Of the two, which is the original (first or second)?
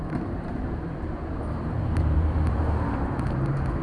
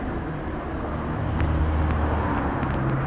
second